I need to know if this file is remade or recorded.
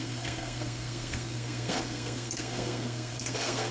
remade